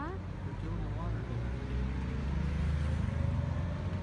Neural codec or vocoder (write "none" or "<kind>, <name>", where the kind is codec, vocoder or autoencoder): none